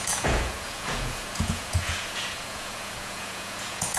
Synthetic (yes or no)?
yes